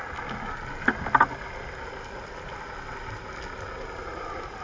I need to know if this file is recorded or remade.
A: recorded